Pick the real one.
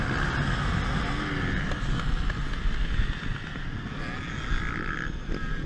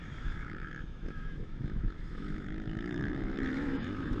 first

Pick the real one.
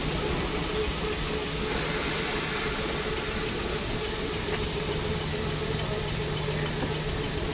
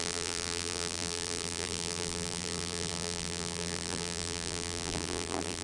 first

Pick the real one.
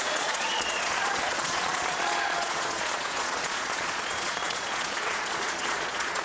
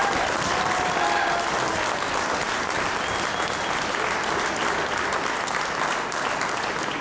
second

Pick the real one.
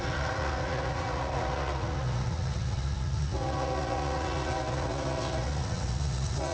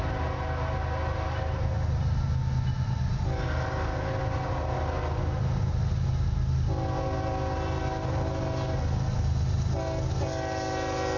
second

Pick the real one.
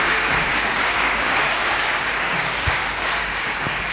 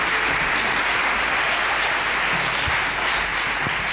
second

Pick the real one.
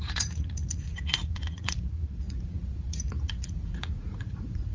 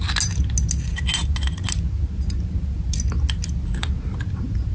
second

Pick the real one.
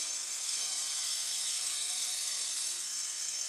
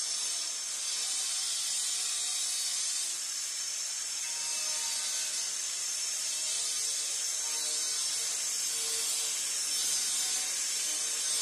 second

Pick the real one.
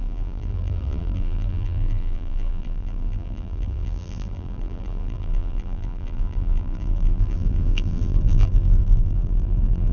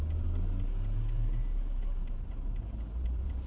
second